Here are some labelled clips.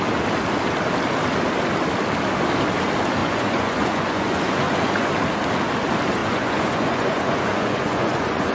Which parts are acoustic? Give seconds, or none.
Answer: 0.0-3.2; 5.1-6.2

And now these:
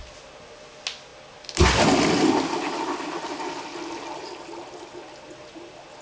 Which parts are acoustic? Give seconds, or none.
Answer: 0.0-6.0

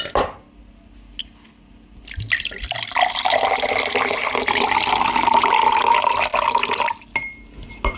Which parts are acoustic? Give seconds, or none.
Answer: 0.0-8.0

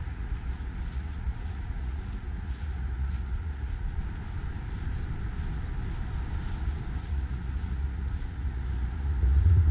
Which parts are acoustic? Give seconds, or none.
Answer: 4.0-7.0

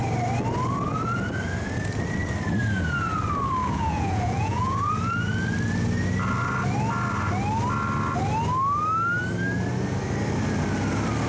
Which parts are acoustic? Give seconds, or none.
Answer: 0.0-3.6; 4.9-11.3

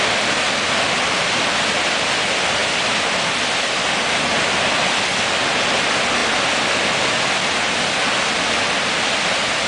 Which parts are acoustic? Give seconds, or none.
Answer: 0.0-9.7